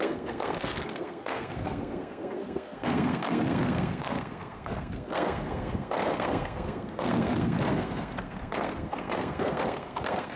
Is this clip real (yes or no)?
no